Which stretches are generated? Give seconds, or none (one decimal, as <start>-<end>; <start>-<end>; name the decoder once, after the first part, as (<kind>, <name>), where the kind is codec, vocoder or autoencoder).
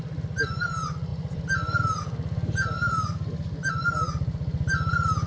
none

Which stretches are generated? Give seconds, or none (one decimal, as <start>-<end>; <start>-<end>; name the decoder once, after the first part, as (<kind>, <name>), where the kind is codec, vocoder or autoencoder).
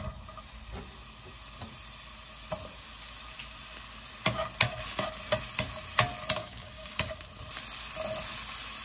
6.4-7.1 (codec, DAC)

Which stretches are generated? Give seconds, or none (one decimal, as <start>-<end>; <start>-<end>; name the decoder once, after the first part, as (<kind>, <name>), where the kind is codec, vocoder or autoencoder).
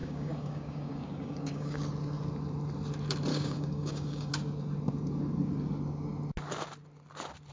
0.0-1.8 (codec, DAC); 3.3-4.3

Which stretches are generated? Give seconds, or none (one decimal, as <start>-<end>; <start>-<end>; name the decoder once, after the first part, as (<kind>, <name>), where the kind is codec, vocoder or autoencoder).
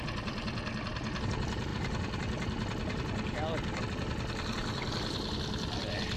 none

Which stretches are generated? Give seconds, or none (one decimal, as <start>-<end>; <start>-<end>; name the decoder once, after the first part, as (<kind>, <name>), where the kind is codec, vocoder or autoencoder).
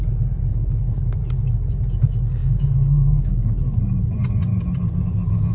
0.5-1.2 (codec, DAC); 2.4-3.6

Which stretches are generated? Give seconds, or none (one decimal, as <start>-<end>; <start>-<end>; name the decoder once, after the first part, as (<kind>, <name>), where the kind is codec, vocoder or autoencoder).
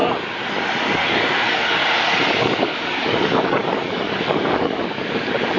0.5-1.8 (codec, DAC); 2.4-5.6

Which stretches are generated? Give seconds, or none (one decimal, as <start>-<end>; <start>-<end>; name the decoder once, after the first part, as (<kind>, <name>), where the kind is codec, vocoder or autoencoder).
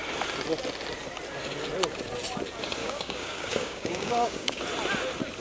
2.8-4.6 (codec, DAC)